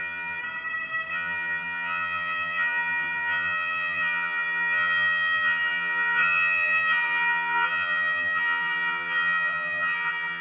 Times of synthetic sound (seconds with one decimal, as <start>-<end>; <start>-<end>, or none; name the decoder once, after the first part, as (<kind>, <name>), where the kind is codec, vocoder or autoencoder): 0.0-0.4 (vocoder, HiFi-GAN); 1.1-10.4